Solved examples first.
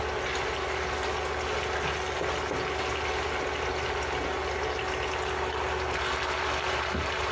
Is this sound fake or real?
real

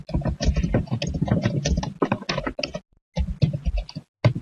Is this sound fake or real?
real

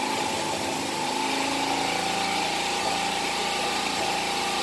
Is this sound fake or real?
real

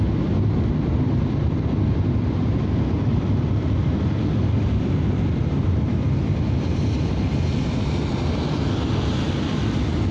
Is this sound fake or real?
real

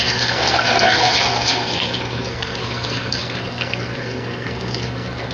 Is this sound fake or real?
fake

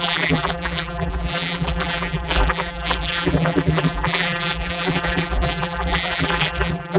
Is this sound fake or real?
fake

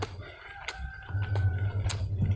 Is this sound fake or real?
real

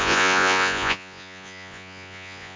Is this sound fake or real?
fake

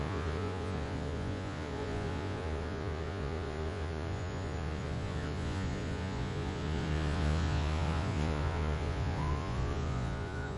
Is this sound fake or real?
fake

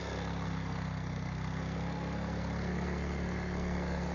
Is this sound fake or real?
fake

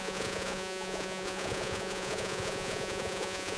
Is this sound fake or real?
fake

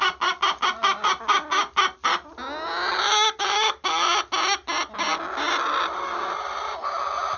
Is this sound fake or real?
real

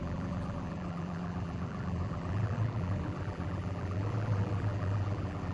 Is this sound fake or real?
fake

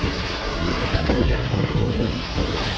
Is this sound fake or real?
fake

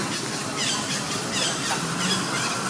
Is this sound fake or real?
real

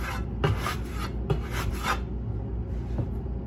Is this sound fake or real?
real